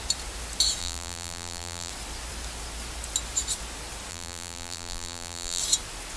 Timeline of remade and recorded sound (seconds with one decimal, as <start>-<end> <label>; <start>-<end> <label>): 0.0-0.8 recorded; 0.8-1.9 remade; 1.9-4.1 recorded; 4.1-5.6 remade; 5.6-6.2 recorded